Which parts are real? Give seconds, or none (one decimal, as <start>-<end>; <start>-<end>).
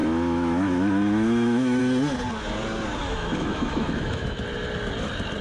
1.8-3.0; 4.4-5.4